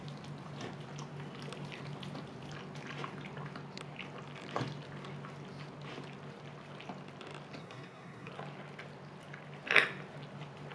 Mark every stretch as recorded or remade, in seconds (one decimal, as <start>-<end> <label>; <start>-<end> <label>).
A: 0.0-7.6 recorded; 7.6-8.3 remade; 8.3-10.7 recorded